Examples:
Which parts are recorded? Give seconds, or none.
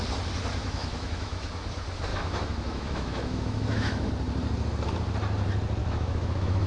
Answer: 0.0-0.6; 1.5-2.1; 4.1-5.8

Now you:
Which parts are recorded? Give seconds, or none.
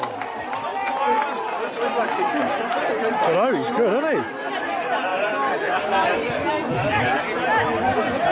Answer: 0.0-8.3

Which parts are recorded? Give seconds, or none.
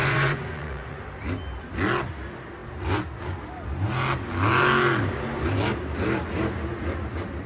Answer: 1.0-7.5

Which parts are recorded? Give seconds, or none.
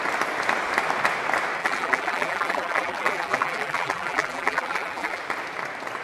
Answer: 0.0-1.6; 5.2-6.0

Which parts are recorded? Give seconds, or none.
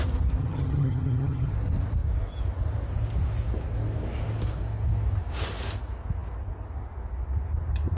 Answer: 0.0-0.4; 1.5-8.0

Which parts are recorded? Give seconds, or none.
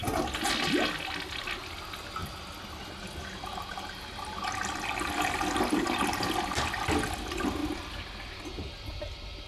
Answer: 0.0-9.5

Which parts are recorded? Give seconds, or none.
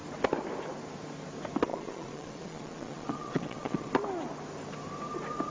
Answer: 0.0-1.7; 3.9-5.5